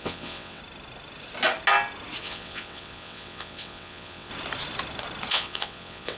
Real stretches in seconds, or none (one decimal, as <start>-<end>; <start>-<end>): 0.6-2.2; 4.3-5.3